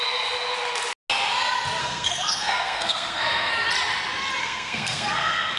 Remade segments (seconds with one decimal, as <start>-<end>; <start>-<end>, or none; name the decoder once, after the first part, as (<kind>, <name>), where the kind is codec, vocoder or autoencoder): 1.8-3.5 (codec, SNAC); 4.4-5.6